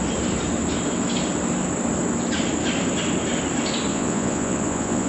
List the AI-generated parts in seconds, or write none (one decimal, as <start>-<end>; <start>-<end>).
3.9-5.1